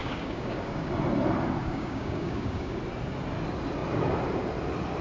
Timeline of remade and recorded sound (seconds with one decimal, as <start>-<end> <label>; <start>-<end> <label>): 0.0-0.9 remade; 0.9-1.6 recorded; 1.6-2.8 remade; 2.8-5.0 recorded